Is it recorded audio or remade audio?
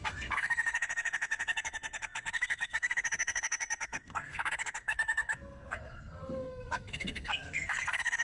remade